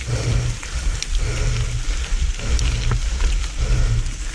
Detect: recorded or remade recorded